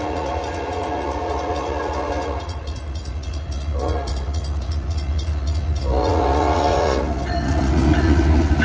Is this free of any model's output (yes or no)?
no